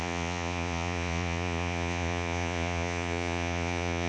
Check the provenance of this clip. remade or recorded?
remade